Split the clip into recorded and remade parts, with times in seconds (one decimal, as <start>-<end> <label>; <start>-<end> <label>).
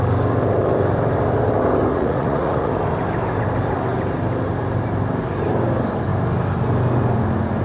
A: 0.0-1.9 recorded; 1.9-2.7 remade; 2.7-7.6 recorded